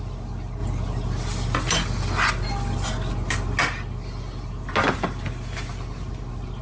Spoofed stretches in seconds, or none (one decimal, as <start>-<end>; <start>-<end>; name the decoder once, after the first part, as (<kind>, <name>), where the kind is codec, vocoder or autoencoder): none